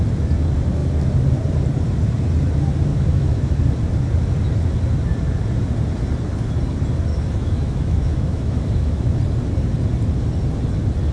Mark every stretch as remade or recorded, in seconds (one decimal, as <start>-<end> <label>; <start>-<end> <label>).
0.0-2.9 recorded; 2.9-3.6 remade; 3.6-7.1 recorded; 7.1-9.2 remade; 9.2-11.1 recorded